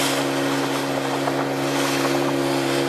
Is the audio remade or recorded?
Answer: recorded